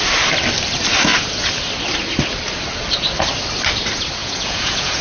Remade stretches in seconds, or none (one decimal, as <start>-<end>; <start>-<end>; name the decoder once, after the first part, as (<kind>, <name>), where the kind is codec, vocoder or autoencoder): 4.2-5.0 (vocoder, Vocos)